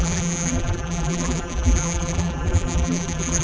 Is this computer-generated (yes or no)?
yes